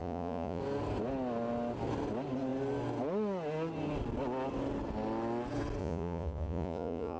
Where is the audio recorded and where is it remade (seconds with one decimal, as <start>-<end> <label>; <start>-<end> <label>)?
0.0-0.6 remade; 0.6-5.8 recorded; 5.8-7.2 remade